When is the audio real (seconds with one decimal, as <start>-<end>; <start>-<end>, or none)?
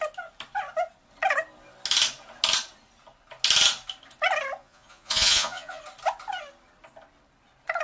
0.0-4.6; 5.8-7.8